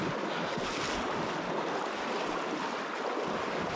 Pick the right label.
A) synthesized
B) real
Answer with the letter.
B